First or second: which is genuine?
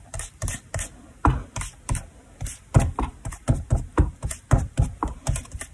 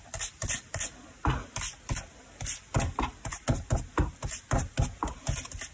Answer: second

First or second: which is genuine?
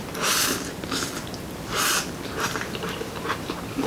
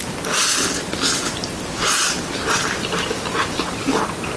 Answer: first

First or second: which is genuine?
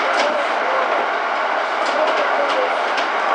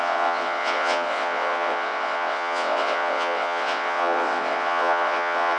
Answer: first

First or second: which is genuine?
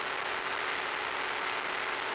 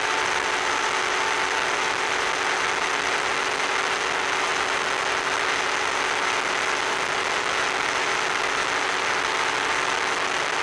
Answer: second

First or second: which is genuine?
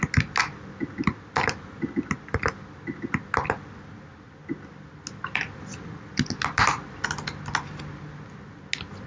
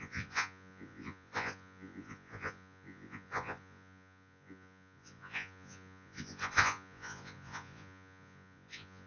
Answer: first